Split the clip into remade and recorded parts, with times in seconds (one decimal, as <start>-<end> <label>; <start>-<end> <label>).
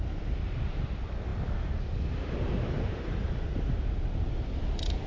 0.0-5.1 recorded